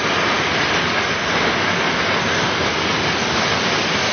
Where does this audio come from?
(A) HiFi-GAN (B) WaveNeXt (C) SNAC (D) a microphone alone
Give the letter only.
D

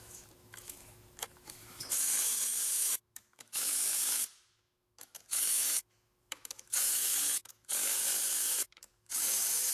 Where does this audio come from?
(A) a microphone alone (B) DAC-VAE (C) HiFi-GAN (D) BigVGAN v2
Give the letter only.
B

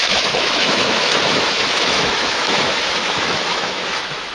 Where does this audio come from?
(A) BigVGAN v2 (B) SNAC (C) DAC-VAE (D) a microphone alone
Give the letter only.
C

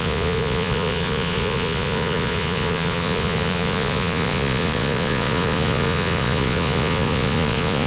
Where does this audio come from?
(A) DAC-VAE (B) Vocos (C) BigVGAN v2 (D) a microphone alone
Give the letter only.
B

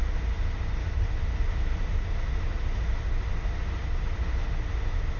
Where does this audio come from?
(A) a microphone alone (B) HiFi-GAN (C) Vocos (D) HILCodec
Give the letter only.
A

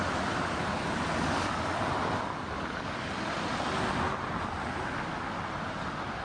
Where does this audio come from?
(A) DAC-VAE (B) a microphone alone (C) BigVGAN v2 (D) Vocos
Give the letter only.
B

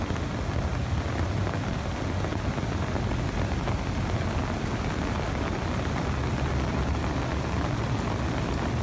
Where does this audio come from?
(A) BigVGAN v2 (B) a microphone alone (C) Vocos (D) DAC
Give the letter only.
B